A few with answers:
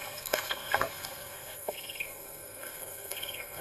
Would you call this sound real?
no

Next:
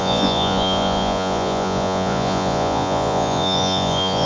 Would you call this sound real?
no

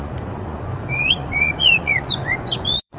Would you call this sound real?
no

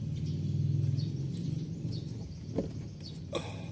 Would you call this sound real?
yes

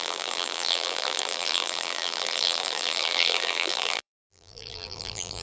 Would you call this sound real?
no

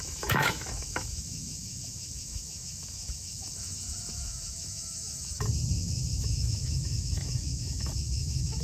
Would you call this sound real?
no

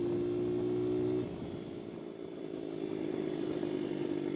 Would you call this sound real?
yes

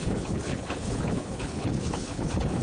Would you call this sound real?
no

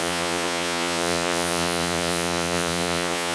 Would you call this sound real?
no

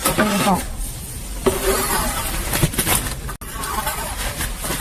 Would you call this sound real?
yes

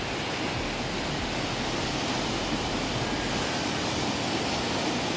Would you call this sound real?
yes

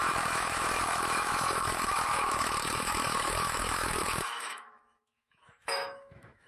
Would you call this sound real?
no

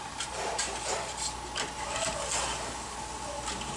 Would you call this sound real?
yes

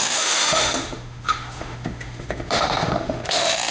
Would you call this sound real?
no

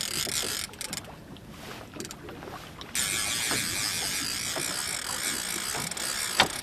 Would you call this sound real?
yes